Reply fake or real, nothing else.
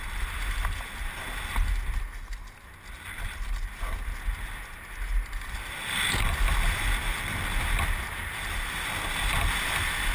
real